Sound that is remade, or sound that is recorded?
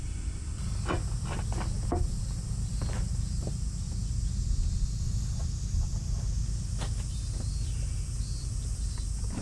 recorded